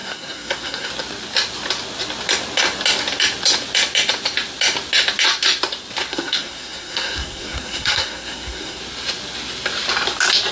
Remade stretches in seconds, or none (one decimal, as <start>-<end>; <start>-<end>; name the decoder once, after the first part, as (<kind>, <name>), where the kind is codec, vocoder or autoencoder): 0.0-0.9 (codec, SNAC); 6.1-8.8